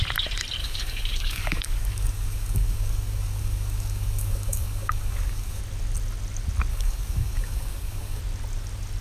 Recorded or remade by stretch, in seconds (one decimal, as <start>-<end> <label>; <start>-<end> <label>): 0.0-0.6 recorded; 0.6-5.6 remade; 5.6-6.7 recorded; 6.7-8.2 remade; 8.2-9.0 recorded